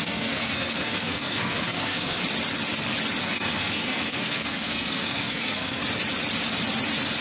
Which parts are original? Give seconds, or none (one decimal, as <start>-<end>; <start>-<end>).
2.2-3.2; 5.8-7.2